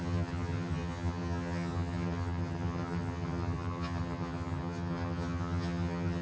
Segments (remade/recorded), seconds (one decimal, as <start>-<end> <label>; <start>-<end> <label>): 0.0-6.2 remade